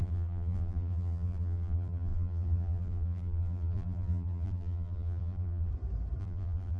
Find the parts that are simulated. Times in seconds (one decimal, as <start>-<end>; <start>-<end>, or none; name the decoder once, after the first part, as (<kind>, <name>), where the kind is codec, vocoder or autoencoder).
0.0-5.7 (vocoder, BigVGAN v2); 6.2-6.8